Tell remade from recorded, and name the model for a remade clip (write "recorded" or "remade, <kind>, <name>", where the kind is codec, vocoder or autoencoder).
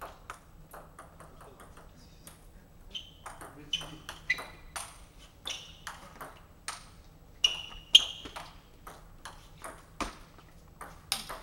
recorded